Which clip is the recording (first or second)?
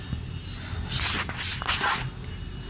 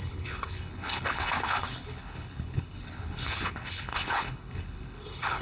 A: first